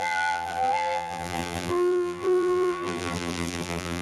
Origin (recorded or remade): remade